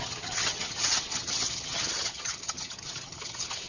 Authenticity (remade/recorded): remade